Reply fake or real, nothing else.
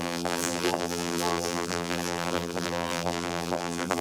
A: fake